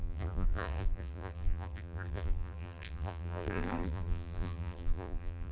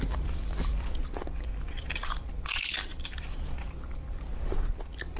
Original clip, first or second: second